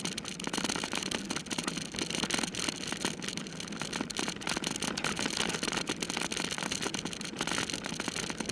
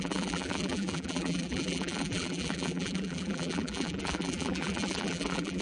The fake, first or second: second